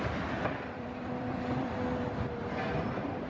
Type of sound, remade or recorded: remade